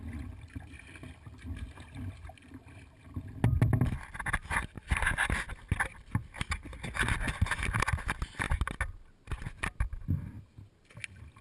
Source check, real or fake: real